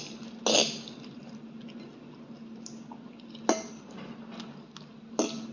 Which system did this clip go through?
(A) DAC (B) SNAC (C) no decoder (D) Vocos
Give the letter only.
C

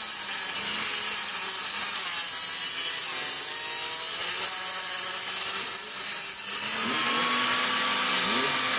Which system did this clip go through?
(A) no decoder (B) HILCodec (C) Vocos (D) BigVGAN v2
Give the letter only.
A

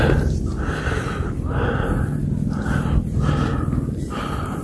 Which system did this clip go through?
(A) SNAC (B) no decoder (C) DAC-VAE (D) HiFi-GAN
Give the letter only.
B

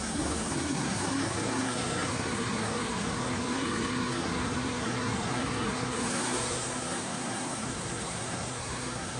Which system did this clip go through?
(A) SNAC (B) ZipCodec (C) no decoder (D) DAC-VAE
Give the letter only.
A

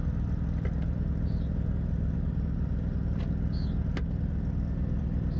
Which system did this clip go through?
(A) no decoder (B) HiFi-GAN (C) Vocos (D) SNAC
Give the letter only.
A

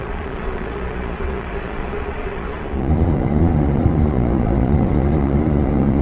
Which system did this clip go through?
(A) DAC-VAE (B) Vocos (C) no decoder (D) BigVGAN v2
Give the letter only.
B